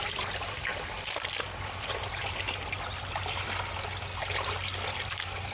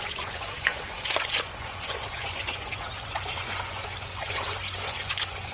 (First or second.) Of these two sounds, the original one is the first